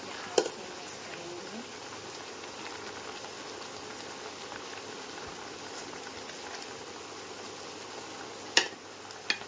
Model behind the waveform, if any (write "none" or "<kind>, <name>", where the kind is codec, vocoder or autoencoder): none